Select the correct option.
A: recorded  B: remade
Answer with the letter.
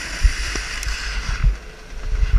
A